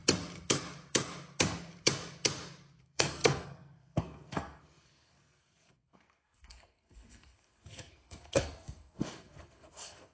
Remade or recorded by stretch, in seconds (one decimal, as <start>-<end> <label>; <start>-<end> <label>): 0.0-2.8 recorded; 2.8-10.1 remade